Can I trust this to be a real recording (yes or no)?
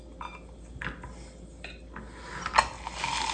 yes